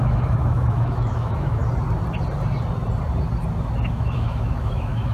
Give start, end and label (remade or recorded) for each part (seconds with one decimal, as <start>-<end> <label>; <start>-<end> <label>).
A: 0.0-1.6 remade; 1.6-3.9 recorded; 3.9-5.1 remade